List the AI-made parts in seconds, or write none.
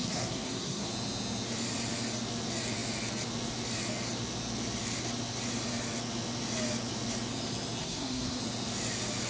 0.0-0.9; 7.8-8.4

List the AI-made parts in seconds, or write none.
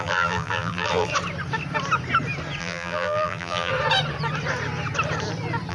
0.0-1.1; 2.6-3.7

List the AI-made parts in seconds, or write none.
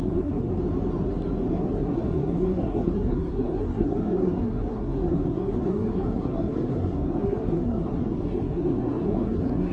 0.0-0.5; 1.5-9.7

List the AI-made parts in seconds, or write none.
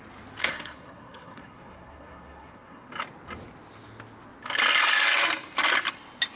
0.4-2.9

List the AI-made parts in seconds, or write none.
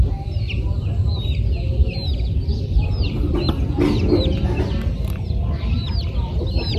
none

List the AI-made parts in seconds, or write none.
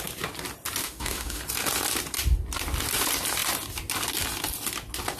0.8-1.4